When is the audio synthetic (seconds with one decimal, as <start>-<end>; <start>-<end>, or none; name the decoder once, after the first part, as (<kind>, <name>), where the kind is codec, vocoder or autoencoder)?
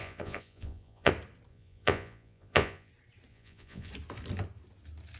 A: 0.0-1.1 (vocoder, Vocos); 1.5-2.9; 3.3-3.9